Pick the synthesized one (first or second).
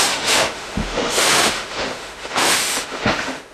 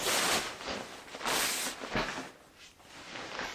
first